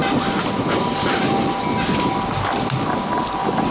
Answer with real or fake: real